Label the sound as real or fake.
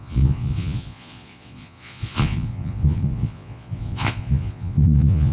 fake